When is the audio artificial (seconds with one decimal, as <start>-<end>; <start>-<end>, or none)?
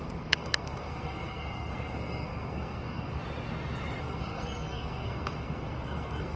0.0-3.2; 4.0-6.4